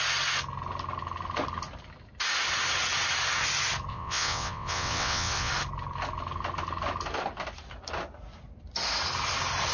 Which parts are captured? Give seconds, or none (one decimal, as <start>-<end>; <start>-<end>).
0.0-3.9; 5.5-9.7